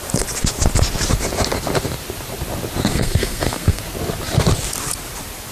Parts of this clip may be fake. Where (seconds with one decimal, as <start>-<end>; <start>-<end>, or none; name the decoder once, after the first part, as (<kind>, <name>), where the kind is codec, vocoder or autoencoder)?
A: 2.9-3.8 (codec, SNAC)